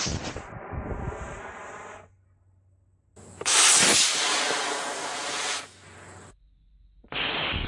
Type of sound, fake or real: real